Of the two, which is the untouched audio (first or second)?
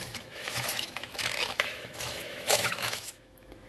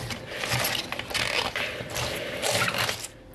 second